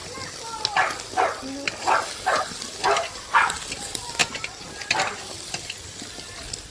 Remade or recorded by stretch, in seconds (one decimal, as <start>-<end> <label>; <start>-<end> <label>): 0.0-6.7 recorded